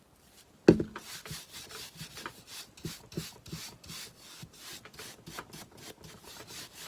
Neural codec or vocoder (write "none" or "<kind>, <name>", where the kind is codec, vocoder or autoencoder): none